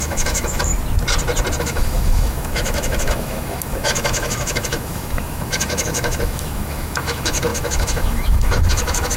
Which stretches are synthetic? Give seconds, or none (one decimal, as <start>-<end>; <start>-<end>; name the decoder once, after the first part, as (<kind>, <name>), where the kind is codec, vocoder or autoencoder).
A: 0.0-0.7 (autoencoder, DAC-VAE); 1.6-9.2